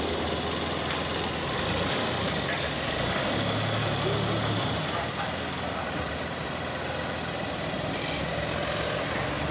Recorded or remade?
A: recorded